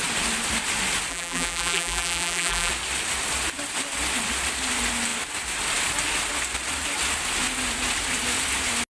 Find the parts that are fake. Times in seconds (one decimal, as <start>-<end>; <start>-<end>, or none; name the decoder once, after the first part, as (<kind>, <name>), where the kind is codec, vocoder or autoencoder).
1.1-2.7 (vocoder, BigVGAN v2)